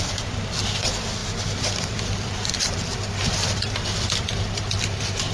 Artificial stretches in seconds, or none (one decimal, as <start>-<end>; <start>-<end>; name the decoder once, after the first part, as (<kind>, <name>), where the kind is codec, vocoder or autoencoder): 0.0-5.3 (vocoder, BigVGAN v2)